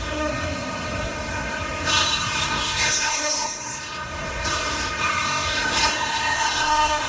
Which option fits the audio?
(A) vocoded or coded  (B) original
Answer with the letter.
A